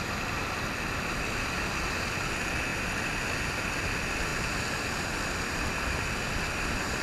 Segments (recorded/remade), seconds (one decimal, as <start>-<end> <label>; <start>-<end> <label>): 0.0-4.3 recorded; 4.3-6.1 remade; 6.1-7.0 recorded